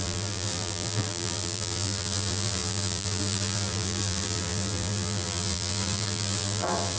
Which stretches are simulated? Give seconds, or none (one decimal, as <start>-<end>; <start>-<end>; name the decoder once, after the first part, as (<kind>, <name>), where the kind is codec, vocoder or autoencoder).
0.0-7.0 (vocoder, BigVGAN v2)